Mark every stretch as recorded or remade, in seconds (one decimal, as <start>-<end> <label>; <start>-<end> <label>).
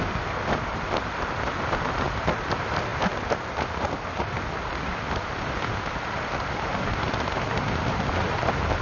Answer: 0.0-8.8 recorded